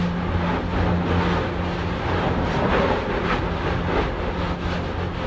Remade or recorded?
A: recorded